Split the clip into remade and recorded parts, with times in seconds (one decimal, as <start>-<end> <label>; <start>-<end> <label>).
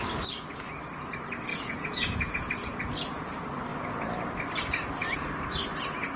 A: 0.0-1.5 recorded; 1.5-3.3 remade; 3.3-6.2 recorded